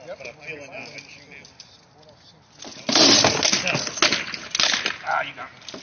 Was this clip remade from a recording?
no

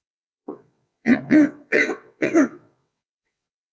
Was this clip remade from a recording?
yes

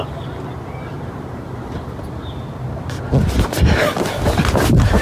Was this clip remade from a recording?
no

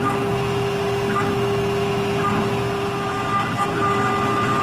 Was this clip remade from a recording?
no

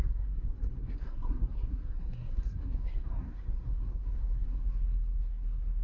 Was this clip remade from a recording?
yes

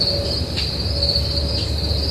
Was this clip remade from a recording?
no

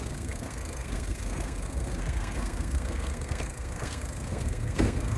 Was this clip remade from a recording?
yes